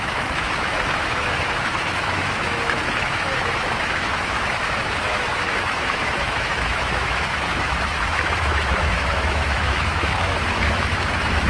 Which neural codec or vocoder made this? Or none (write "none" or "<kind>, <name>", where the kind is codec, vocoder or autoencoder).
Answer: autoencoder, DAC-VAE